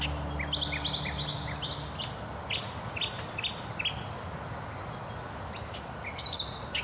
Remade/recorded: recorded